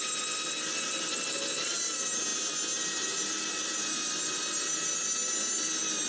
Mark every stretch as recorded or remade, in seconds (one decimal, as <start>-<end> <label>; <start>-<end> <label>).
0.0-6.1 recorded